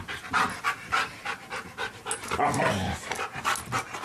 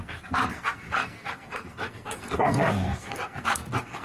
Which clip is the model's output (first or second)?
second